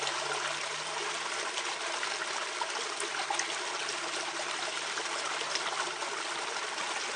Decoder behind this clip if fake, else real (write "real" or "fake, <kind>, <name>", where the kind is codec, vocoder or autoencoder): real